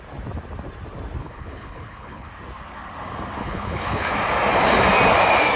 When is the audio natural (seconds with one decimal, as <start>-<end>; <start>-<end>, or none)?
0.0-1.2; 2.3-3.4; 4.1-5.6